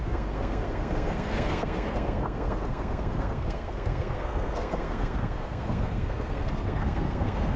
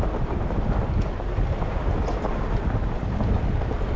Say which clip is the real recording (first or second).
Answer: second